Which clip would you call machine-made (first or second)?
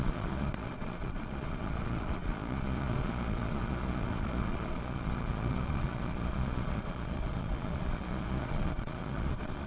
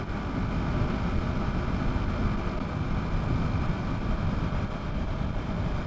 first